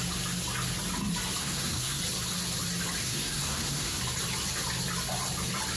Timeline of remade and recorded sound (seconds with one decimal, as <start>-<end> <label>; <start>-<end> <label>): 0.0-1.4 recorded; 1.4-2.0 remade; 2.0-3.0 recorded; 3.0-4.0 remade; 4.0-5.8 recorded